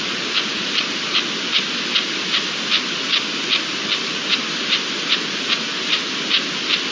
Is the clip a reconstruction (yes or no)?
no